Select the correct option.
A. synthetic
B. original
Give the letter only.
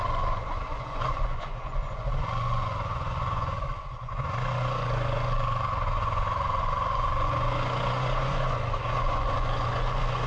A